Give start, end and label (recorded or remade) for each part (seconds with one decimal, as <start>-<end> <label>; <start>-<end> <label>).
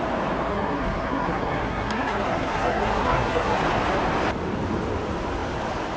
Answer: 0.0-0.5 recorded; 0.5-3.6 remade; 3.6-6.0 recorded